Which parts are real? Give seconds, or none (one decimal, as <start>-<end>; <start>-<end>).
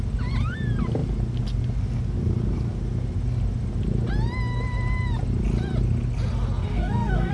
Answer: 0.0-6.7